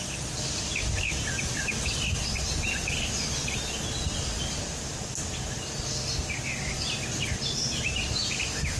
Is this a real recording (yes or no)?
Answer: yes